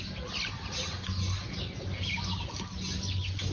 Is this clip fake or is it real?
real